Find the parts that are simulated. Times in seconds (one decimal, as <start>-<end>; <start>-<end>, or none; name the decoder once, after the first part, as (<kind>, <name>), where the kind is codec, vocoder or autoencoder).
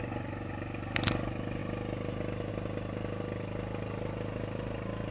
none